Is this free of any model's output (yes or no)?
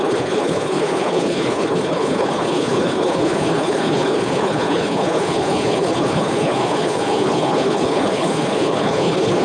no